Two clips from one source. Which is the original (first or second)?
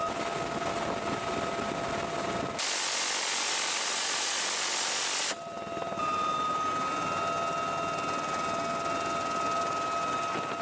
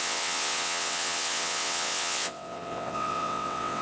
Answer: first